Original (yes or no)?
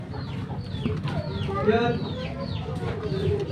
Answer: yes